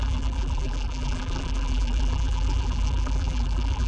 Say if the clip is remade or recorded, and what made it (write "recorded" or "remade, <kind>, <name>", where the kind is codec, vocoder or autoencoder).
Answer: remade, vocoder, BigVGAN v2